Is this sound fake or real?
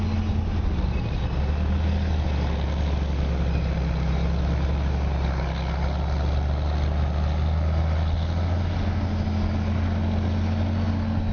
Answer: real